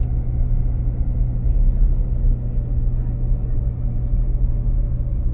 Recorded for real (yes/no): yes